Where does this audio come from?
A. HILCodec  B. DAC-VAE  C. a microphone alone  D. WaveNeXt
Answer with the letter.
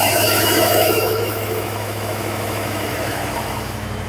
B